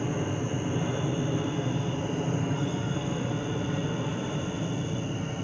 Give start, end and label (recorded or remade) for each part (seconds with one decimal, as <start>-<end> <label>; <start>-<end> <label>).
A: 0.0-2.4 recorded; 2.4-3.3 remade; 3.3-5.4 recorded